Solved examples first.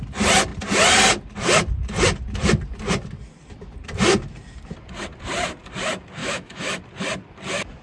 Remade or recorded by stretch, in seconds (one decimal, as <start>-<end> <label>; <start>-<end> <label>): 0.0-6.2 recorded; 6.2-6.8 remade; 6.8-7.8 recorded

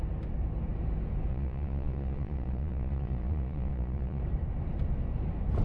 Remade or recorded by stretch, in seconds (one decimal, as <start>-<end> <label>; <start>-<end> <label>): 0.0-1.3 recorded; 1.3-4.2 remade; 4.2-5.6 recorded

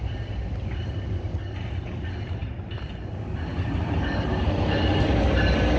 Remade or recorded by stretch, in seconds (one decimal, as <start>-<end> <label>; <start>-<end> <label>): 0.0-2.4 recorded; 2.4-3.1 remade; 3.1-3.5 recorded; 3.5-4.5 remade; 4.5-5.8 recorded

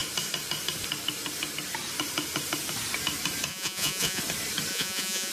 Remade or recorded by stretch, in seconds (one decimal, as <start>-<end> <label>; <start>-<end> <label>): 0.0-3.5 recorded; 3.5-4.2 remade; 4.2-4.7 recorded; 4.7-5.3 remade

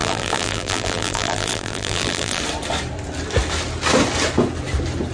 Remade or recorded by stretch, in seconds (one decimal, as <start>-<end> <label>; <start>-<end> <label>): 0.0-2.4 remade; 2.4-5.1 recorded